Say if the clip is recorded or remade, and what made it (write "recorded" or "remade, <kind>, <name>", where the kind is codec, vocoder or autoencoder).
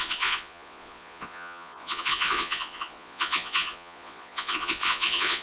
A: remade, vocoder, Vocos